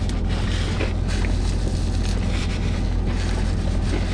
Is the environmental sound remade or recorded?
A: recorded